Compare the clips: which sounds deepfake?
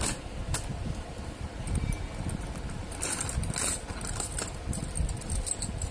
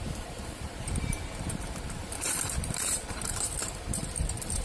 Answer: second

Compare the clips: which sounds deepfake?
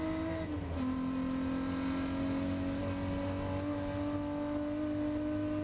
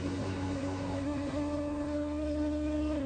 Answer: second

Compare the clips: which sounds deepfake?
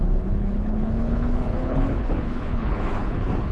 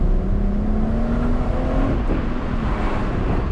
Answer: first